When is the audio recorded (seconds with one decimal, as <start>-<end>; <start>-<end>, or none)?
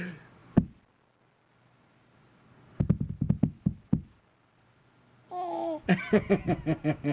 0.0-7.1